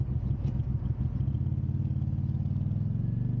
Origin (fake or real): real